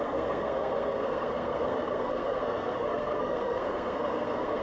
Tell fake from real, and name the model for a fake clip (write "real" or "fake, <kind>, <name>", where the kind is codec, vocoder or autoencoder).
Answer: fake, codec, SNAC